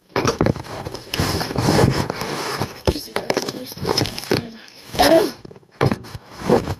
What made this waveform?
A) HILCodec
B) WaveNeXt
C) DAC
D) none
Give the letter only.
C